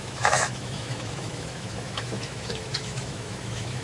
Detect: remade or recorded remade